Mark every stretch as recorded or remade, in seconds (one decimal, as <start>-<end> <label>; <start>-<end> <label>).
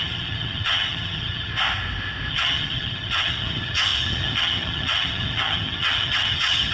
0.0-1.5 remade; 1.5-2.3 recorded; 2.3-6.7 remade